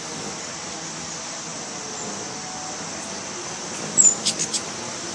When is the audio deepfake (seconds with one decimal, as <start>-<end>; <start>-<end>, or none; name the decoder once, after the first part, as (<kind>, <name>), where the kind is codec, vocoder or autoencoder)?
none